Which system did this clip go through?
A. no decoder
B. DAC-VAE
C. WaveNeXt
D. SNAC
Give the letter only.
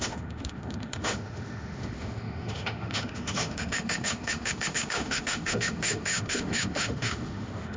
B